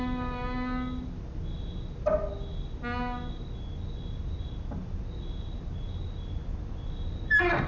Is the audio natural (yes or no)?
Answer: yes